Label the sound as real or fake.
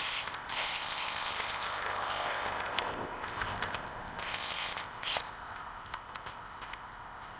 fake